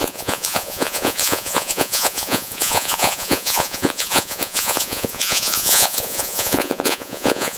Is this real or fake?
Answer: fake